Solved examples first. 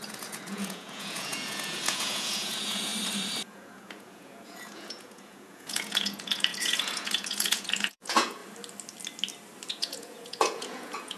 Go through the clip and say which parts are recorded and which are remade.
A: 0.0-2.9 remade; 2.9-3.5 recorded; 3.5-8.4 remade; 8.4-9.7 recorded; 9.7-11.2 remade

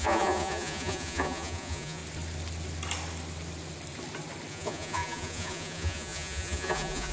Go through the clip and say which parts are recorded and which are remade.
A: 0.0-2.0 remade; 2.0-4.5 recorded; 4.5-7.1 remade

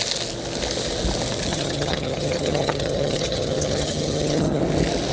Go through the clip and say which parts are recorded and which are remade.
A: 0.0-1.5 recorded; 1.5-4.6 remade; 4.6-5.1 recorded

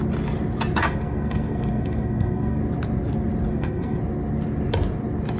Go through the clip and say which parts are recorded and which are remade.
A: 0.0-0.8 recorded; 0.8-2.6 remade; 2.6-3.5 recorded; 3.5-4.0 remade; 4.0-5.4 recorded

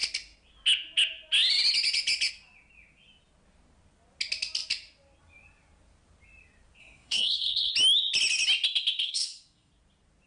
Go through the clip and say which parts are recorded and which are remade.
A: 0.0-6.8 recorded; 6.8-7.7 remade; 7.7-9.0 recorded; 9.0-9.7 remade; 9.7-10.3 recorded

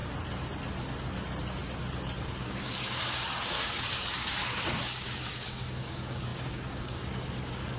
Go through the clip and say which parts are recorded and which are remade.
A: 0.0-2.2 recorded; 2.2-7.8 remade